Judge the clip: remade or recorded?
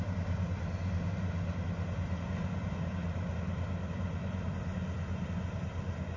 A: recorded